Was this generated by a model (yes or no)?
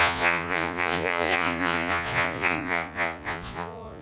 yes